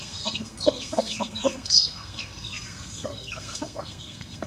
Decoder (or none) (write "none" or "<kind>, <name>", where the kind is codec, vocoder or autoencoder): codec, SNAC